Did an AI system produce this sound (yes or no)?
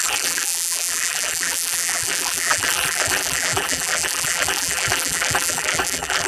yes